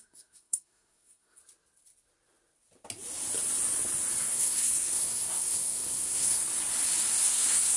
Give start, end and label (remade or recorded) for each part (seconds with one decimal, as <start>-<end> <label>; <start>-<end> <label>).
0.0-1.4 remade; 1.4-4.2 recorded; 4.2-6.4 remade; 6.4-7.2 recorded; 7.2-7.8 remade